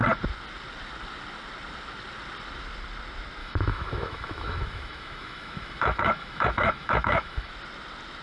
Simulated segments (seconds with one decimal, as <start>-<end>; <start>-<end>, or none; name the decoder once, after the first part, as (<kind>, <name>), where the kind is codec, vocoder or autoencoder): 3.4-7.5 (autoencoder, DAC-VAE)